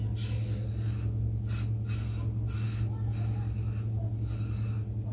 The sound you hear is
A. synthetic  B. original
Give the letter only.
B